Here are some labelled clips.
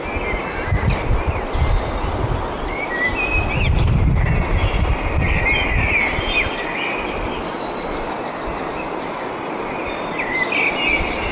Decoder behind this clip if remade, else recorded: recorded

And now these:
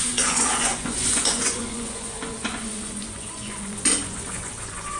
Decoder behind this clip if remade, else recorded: remade, vocoder, Vocos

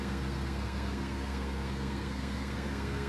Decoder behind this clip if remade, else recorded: remade, codec, SNAC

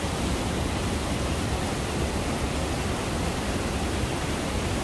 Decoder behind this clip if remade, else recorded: recorded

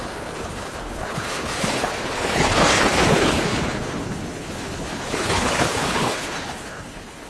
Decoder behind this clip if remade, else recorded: remade, codec, HILCodec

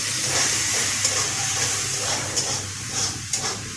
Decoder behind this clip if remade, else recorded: remade, vocoder, BigVGAN v2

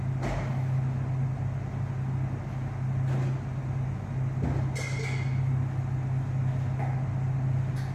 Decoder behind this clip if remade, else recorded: recorded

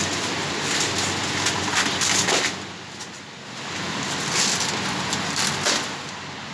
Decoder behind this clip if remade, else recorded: recorded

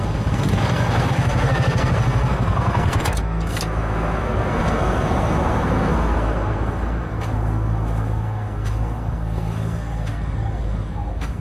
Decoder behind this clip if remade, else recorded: remade, codec, SNAC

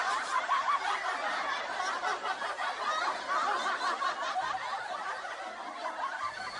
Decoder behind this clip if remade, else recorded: recorded